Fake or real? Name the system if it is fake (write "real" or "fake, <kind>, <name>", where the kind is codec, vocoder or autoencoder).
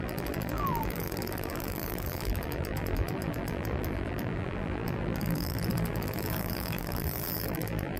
fake, vocoder, BigVGAN v2